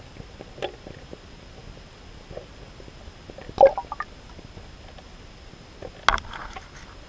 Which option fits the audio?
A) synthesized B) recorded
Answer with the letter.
B